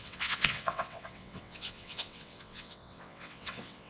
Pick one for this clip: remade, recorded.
remade